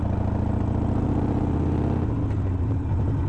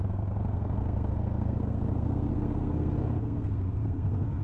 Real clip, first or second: first